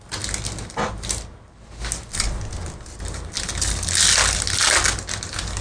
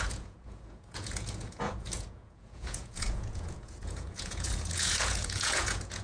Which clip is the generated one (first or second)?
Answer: second